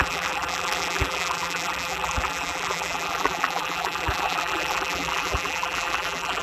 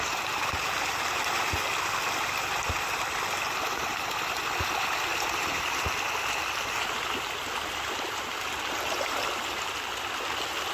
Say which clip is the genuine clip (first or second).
second